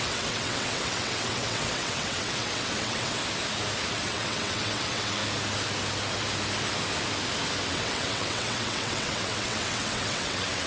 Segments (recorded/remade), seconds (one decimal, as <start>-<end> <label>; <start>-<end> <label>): 0.0-3.2 remade; 3.2-3.9 recorded; 3.9-5.2 remade; 5.2-7.7 recorded; 7.7-10.7 remade